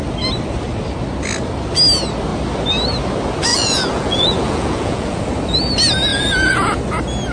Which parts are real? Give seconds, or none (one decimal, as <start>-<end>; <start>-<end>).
0.0-3.5; 5.2-6.1; 6.8-7.3